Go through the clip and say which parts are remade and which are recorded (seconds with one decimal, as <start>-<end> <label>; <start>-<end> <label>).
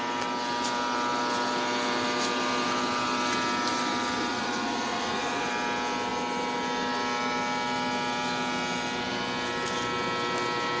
0.0-4.3 recorded; 4.3-5.5 remade; 5.5-10.8 recorded